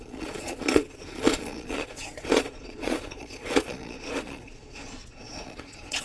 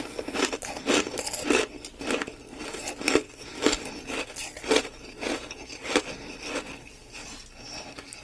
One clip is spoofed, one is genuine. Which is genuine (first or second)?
second